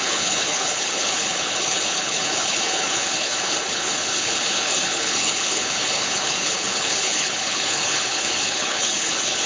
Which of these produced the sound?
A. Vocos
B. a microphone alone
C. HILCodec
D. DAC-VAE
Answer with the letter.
C